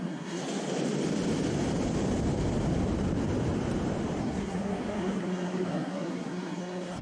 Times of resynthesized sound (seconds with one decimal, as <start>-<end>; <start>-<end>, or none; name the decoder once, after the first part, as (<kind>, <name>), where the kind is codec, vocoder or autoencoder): 0.0-0.4 (codec, SNAC); 4.2-7.0

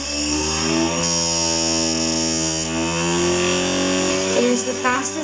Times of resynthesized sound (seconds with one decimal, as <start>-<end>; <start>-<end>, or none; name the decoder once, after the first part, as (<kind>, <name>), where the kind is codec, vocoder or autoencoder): 0.0-1.0 (codec, SNAC); 4.1-5.2

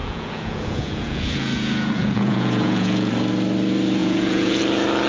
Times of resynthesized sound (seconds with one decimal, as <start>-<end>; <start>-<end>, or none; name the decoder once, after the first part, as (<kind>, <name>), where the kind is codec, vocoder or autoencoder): 0.0-3.1 (vocoder, Vocos); 4.0-4.6

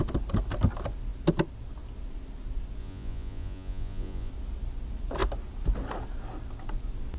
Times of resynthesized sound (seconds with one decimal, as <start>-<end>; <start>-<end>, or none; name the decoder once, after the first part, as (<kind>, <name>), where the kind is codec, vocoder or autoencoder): 2.8-4.3 (vocoder, Vocos)

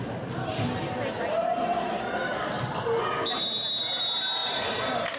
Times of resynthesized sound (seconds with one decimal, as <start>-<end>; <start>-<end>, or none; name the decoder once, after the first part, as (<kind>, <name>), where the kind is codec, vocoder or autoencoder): none

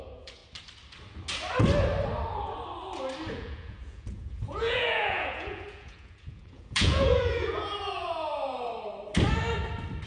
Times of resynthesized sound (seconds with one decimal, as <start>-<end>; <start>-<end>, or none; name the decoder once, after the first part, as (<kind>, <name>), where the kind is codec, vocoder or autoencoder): 0.0-0.4 (vocoder, Vocos); 3.3-8.3